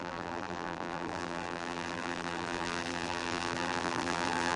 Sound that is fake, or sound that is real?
fake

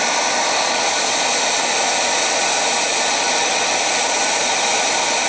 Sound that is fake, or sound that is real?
real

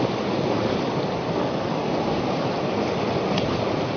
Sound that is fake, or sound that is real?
real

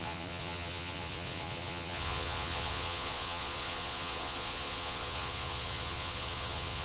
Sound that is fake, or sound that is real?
fake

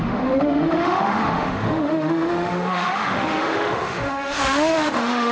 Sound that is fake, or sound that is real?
fake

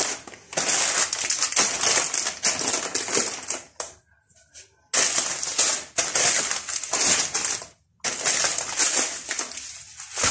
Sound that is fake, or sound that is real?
real